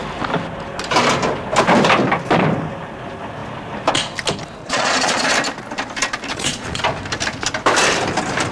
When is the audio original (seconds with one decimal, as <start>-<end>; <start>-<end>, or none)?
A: 0.0-4.6; 5.3-6.3; 6.8-8.5